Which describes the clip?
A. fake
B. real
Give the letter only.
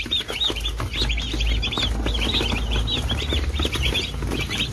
B